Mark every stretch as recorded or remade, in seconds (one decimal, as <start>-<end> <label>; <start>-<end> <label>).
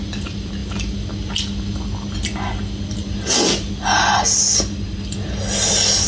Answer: 0.0-6.1 recorded